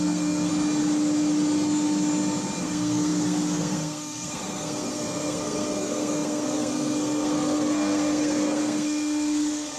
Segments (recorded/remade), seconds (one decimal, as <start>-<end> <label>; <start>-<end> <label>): 0.0-0.5 remade; 0.5-2.6 recorded; 2.6-9.8 remade